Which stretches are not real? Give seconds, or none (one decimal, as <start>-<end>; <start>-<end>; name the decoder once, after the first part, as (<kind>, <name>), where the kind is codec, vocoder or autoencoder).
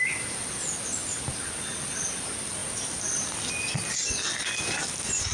none